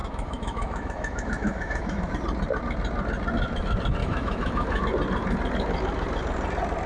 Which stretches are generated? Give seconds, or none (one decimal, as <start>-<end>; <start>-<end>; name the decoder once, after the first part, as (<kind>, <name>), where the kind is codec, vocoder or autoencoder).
0.0-2.1 (autoencoder, DAC-VAE); 4.0-4.8